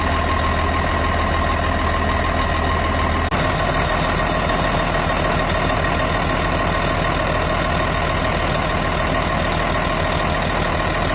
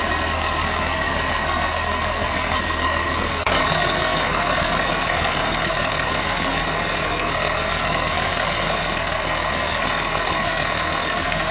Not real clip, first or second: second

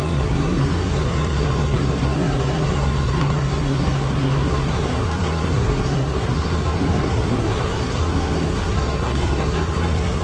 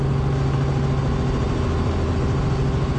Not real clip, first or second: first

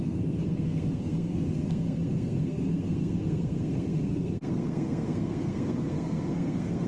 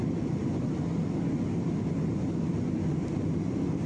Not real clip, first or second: first